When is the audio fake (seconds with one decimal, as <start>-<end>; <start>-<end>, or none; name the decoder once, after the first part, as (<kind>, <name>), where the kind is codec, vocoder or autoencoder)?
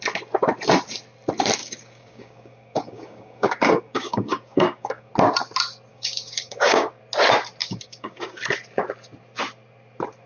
1.6-5.1 (codec, DAC); 5.9-7.0; 7.6-8.4